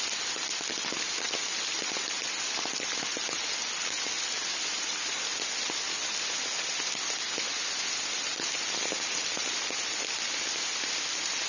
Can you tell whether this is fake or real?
real